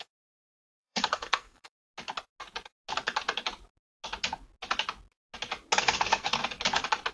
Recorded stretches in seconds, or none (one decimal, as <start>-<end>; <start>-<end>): 1.8-5.8; 6.4-7.1